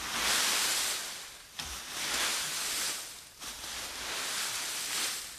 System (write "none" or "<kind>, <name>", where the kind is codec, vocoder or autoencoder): none